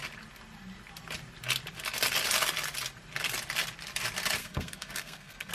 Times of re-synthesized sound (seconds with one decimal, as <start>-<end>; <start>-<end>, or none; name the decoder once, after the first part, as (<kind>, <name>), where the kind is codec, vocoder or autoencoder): 4.4-5.5 (codec, SNAC)